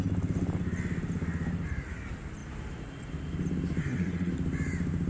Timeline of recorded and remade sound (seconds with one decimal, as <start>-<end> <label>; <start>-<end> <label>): 0.0-3.8 recorded; 3.8-4.3 remade; 4.3-5.1 recorded